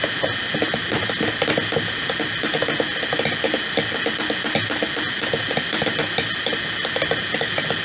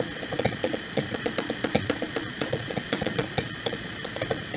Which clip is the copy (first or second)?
second